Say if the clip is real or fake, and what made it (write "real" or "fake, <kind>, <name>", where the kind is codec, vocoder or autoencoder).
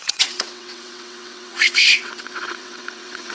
fake, vocoder, WaveNeXt